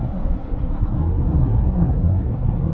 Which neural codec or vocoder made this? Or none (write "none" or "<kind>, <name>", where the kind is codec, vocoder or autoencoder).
codec, SNAC